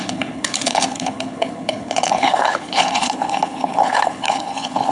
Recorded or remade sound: remade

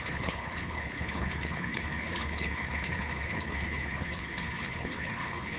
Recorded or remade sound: remade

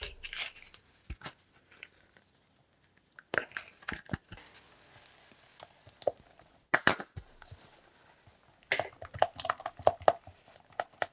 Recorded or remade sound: recorded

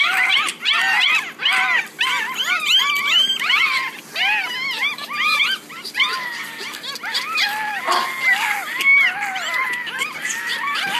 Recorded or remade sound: remade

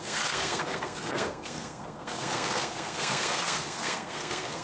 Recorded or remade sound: remade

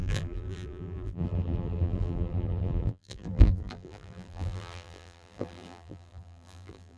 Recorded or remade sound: remade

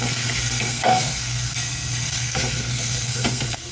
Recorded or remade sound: remade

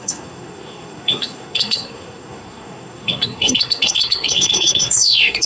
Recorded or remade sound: remade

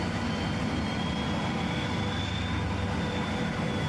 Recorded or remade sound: recorded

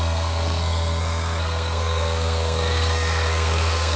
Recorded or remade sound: remade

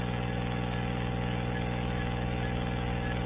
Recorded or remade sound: recorded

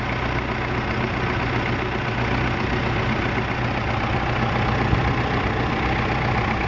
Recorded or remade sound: recorded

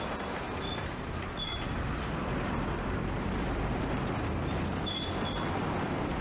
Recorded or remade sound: remade